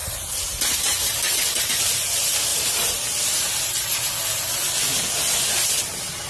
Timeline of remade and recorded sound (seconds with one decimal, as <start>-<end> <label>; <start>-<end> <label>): 0.0-1.9 remade; 1.9-2.5 recorded; 2.5-3.5 remade; 3.5-6.3 recorded